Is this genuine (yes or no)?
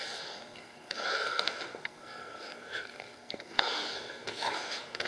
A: no